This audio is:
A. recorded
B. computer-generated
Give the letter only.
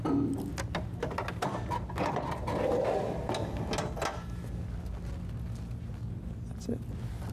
A